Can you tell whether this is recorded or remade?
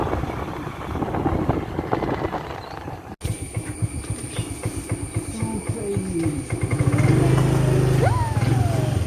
recorded